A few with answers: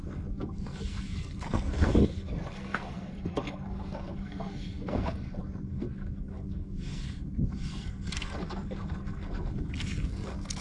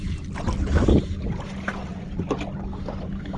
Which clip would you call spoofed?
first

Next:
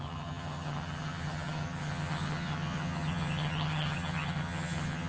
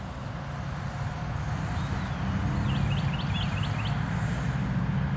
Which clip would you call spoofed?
first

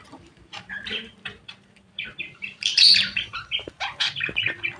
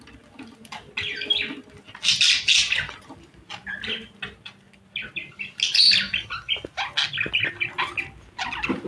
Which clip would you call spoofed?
first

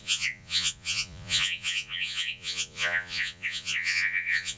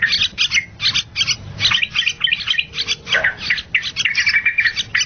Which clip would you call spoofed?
first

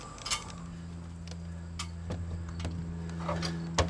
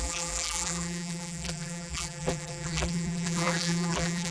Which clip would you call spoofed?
second